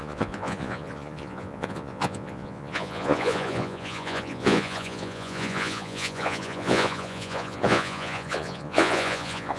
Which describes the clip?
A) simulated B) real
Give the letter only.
A